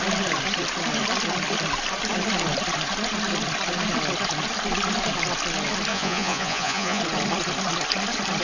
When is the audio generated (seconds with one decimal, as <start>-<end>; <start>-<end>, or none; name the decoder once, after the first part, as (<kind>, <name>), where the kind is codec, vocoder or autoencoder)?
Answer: 5.9-7.0 (vocoder, Vocos)